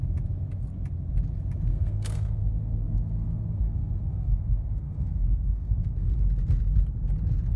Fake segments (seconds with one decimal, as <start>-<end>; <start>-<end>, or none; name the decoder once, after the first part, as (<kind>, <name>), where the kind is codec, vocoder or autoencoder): 1.7-6.2 (codec, SNAC)